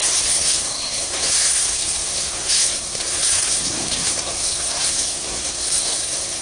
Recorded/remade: remade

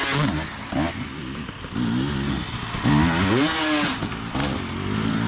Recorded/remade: recorded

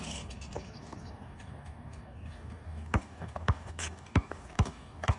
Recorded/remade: remade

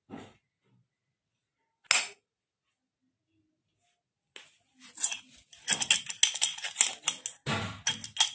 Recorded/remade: recorded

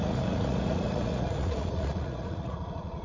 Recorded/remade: remade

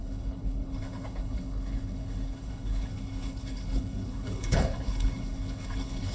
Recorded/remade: remade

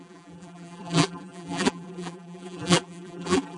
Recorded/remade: remade